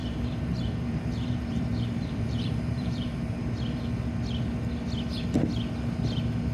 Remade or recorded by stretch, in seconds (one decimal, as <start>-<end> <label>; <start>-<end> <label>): 0.0-3.5 remade; 3.5-6.5 recorded